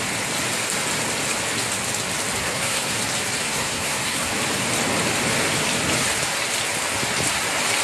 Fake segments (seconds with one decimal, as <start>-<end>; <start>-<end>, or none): 2.4-3.0; 3.4-4.3